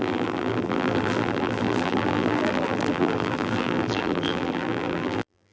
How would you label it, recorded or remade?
remade